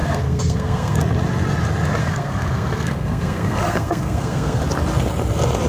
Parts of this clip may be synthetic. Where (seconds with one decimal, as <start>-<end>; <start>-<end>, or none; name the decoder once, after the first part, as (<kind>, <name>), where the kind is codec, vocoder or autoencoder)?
0.0-1.0 (codec, SNAC); 2.0-4.6

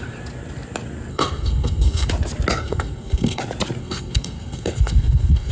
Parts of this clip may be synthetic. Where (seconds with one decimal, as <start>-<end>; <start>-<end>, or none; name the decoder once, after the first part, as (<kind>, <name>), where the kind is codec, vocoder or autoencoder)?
1.1-2.1 (codec, SNAC); 2.6-3.4; 3.8-5.5

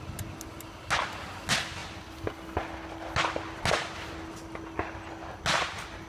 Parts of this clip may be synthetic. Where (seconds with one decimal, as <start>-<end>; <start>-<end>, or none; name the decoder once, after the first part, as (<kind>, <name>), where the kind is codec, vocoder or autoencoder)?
none

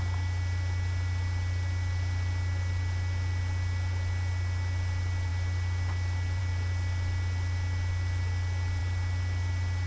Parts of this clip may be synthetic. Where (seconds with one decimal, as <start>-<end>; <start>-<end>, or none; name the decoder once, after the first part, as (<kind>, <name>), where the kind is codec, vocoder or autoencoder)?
none

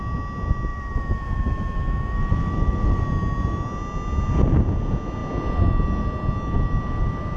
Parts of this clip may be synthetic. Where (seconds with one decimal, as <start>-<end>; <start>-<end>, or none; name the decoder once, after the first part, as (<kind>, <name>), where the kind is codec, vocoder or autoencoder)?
0.7-3.0 (autoencoder, DAC-VAE)

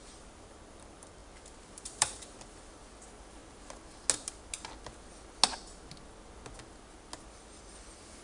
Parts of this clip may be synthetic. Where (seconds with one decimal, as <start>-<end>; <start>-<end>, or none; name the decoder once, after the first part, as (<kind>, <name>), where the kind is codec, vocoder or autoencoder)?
0.0-3.4 (vocoder, BigVGAN v2)

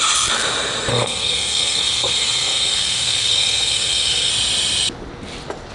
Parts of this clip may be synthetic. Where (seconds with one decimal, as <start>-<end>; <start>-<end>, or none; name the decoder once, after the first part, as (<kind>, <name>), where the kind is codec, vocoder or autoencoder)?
0.9-4.3 (codec, SNAC)

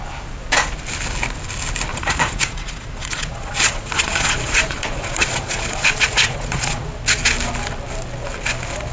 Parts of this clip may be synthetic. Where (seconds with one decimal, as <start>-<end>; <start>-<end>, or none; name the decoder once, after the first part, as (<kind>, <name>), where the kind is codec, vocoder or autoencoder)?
1.9-6.9 (vocoder, Vocos)